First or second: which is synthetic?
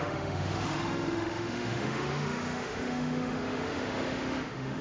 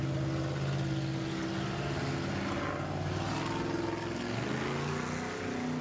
first